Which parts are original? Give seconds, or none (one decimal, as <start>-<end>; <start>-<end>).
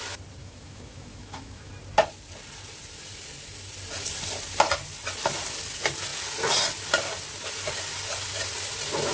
0.0-0.4; 1.7-9.1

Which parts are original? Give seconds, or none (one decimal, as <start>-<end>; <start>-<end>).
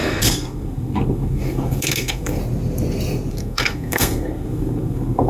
2.4-3.3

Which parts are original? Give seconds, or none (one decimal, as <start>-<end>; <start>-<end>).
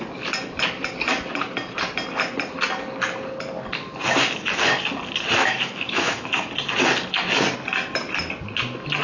0.0-5.4; 6.5-9.0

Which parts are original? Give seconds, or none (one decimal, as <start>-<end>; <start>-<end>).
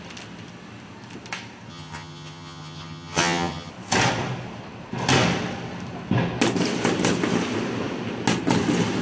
0.0-1.7; 3.7-9.0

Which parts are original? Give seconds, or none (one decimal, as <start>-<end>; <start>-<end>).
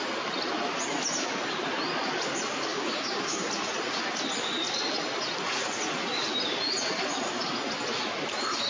0.0-2.7; 3.5-8.7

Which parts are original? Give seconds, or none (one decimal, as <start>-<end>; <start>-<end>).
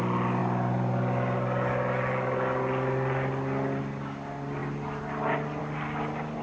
0.0-6.4